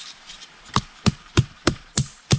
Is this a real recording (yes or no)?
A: no